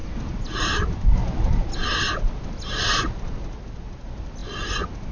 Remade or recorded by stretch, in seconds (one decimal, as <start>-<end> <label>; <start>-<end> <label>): 0.0-5.1 recorded